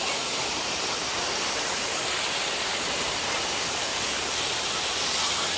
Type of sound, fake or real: real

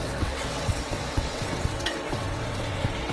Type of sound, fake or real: fake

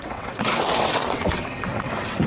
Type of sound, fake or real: fake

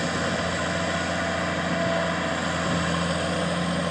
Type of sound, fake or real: real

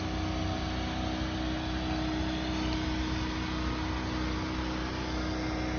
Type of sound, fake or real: real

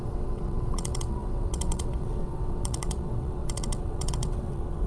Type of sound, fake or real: fake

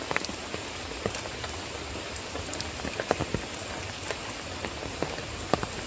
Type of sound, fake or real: real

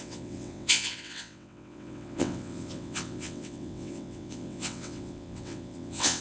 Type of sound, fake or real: fake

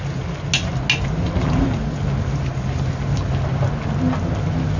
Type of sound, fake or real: real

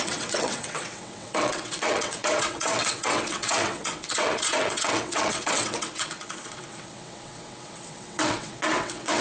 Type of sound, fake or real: fake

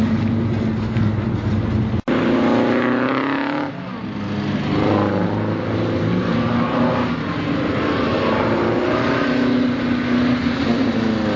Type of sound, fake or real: real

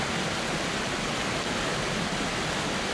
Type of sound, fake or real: real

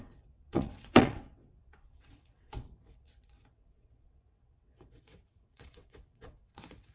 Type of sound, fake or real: fake